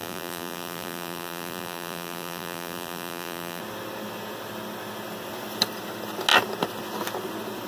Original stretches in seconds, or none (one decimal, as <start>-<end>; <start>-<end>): 3.6-7.7